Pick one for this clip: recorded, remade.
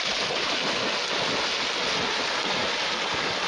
recorded